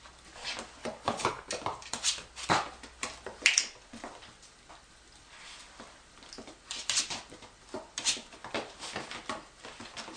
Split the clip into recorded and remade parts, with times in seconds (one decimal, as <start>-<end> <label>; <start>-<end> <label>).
0.0-0.8 recorded; 0.8-1.5 remade; 1.5-10.2 recorded